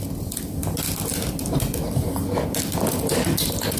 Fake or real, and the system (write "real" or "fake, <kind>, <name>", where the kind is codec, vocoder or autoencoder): real